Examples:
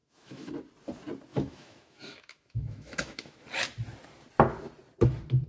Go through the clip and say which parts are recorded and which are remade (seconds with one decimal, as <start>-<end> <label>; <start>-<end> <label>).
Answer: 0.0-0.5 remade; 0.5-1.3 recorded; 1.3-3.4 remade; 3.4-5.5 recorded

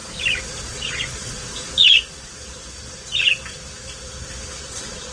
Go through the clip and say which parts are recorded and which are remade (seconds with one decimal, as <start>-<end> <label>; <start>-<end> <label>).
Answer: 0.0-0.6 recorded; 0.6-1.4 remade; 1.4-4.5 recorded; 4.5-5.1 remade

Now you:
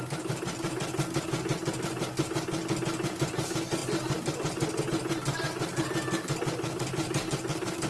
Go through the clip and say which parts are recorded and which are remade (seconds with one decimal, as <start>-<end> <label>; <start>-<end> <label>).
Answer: 0.0-7.9 recorded

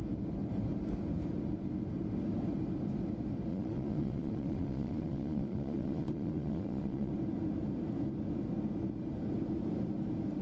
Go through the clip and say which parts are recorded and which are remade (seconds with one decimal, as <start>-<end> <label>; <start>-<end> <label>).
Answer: 0.0-3.5 recorded; 3.5-7.1 remade; 7.1-10.4 recorded

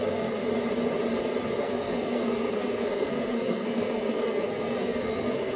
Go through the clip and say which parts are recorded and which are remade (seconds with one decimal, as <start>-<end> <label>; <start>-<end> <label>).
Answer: 0.0-0.4 remade; 0.4-1.6 recorded; 1.6-5.6 remade

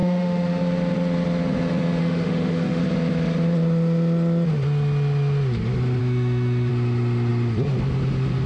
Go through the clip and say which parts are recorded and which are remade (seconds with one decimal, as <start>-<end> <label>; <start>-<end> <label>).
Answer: 0.0-0.6 remade; 0.6-2.0 recorded; 2.0-2.8 remade; 2.8-6.0 recorded; 6.0-6.7 remade; 6.7-8.5 recorded

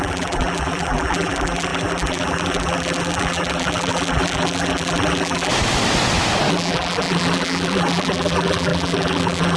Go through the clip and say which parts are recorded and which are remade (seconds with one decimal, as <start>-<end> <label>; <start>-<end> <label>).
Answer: 0.0-5.5 remade; 5.5-6.5 recorded; 6.5-9.6 remade